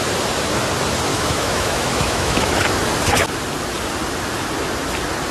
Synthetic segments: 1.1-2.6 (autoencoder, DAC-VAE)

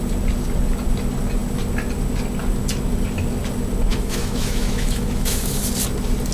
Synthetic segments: 3.9-5.6 (autoencoder, DAC-VAE)

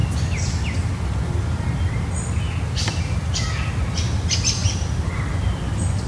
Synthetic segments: none